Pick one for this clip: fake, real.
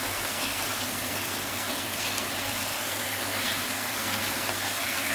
fake